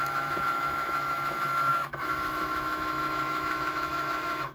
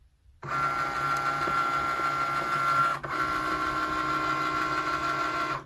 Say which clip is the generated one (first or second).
first